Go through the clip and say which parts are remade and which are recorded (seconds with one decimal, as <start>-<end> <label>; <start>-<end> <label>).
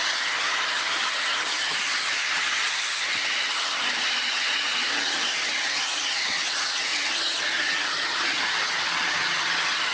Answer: 0.0-9.9 remade